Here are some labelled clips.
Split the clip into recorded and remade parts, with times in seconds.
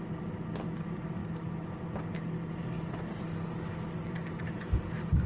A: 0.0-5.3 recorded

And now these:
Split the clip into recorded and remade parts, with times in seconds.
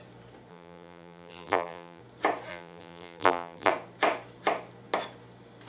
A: 0.0-0.5 recorded; 0.5-2.0 remade; 2.0-2.5 recorded; 2.5-3.7 remade; 3.7-5.7 recorded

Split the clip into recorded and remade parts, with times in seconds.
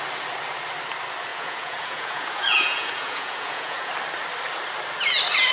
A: 0.0-1.3 recorded; 1.3-3.9 remade; 3.9-5.5 recorded